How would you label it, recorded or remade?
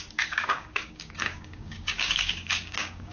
remade